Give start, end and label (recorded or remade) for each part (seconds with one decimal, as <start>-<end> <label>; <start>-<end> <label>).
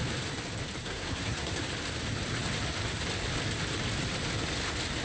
0.0-0.8 recorded; 0.8-1.5 remade; 1.5-5.0 recorded